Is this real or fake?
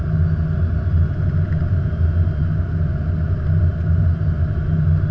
real